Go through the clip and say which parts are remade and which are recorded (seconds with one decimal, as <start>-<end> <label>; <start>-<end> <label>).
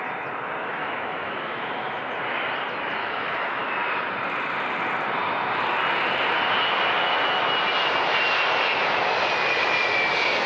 0.0-0.6 recorded; 0.6-2.0 remade; 2.0-3.0 recorded; 3.0-3.7 remade; 3.7-10.5 recorded